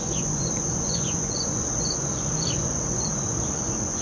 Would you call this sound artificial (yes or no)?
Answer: yes